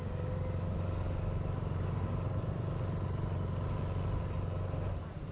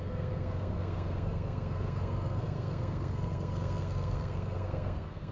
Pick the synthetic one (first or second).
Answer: second